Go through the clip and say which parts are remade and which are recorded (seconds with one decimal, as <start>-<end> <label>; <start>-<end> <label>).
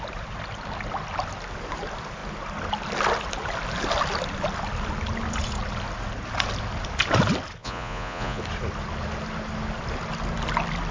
0.0-7.6 recorded; 7.6-8.4 remade; 8.4-10.9 recorded